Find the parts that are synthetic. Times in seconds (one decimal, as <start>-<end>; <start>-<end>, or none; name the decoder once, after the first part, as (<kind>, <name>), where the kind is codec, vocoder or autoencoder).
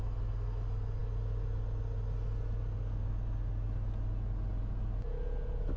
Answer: none